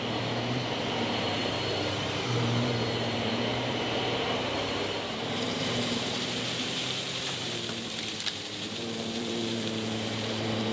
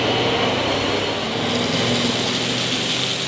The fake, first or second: first